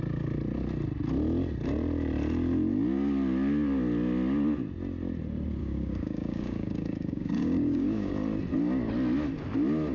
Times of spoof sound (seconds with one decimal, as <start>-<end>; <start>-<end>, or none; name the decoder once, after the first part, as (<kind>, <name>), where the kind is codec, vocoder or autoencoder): 5.6-8.1 (codec, DAC)